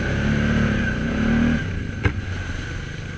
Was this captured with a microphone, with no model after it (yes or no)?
yes